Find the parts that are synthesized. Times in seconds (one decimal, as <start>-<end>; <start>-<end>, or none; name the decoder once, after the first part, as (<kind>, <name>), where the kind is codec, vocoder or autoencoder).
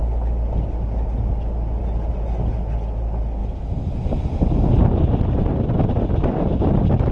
3.4-4.7 (vocoder, BigVGAN v2)